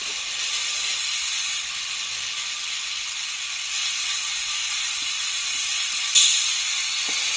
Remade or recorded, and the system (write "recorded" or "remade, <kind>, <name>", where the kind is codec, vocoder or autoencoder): remade, vocoder, BigVGAN v2